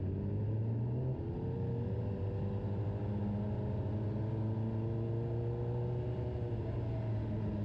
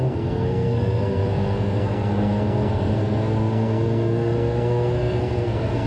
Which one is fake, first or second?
second